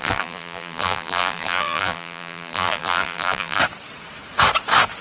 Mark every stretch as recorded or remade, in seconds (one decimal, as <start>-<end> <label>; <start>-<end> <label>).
0.0-3.6 remade; 3.6-5.0 recorded